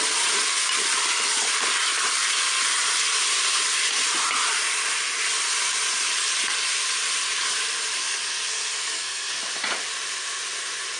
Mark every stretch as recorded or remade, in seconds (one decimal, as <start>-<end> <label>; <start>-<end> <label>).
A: 0.0-8.0 recorded; 8.0-9.4 remade; 9.4-11.0 recorded